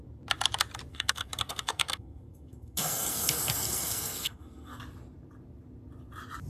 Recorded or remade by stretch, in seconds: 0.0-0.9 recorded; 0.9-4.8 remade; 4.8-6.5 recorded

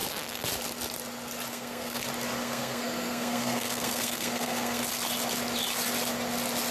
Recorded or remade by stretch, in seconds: 0.0-1.5 recorded; 1.5-2.0 remade; 2.0-2.4 recorded; 2.4-4.8 remade; 4.8-6.7 recorded

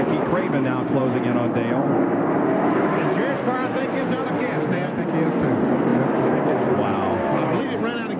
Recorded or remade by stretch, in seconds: 0.0-8.2 recorded

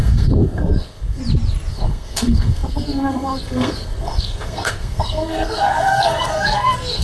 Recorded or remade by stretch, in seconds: 0.0-1.2 remade; 1.2-1.7 recorded; 1.7-7.0 remade